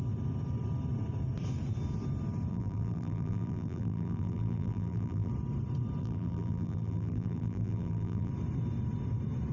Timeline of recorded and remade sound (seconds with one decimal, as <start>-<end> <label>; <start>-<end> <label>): 0.0-2.5 recorded; 2.5-5.3 remade; 5.3-6.0 recorded; 6.0-8.3 remade; 8.3-9.5 recorded